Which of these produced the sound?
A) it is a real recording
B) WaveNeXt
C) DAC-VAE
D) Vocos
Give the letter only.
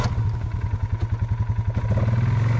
A